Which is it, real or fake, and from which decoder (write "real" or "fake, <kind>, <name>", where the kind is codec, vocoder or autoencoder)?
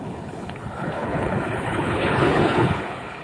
fake, codec, HILCodec